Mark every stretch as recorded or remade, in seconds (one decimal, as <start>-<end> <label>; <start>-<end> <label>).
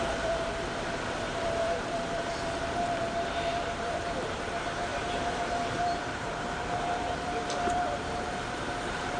0.0-9.2 remade